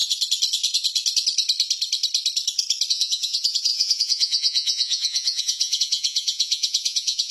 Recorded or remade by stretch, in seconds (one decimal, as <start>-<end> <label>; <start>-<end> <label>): 0.0-2.9 recorded; 2.9-7.3 remade